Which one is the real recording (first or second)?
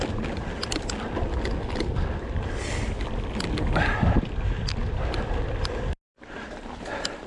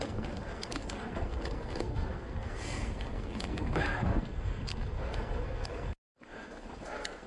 first